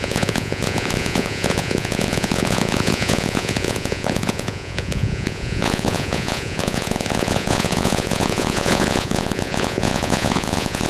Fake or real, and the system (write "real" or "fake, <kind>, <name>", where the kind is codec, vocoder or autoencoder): fake, vocoder, Vocos